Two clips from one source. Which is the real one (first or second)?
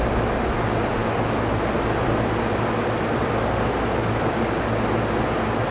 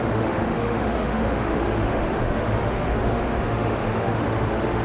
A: first